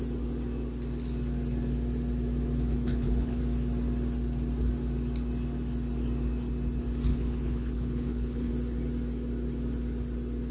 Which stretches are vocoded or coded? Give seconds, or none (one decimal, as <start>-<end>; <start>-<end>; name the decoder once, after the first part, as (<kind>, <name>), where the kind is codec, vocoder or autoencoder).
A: 2.7-3.4 (codec, HILCodec); 7.1-8.5